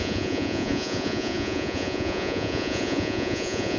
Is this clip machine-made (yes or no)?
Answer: yes